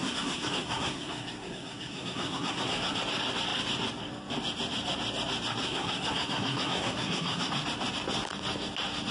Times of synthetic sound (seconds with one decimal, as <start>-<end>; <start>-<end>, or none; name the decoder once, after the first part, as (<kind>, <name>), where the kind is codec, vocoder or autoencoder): 0.0-3.0 (codec, SNAC); 5.6-7.5

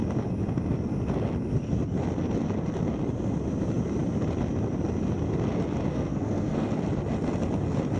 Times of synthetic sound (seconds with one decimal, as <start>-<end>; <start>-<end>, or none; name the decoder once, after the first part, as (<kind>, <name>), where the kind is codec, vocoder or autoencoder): 5.9-6.7 (codec, SNAC)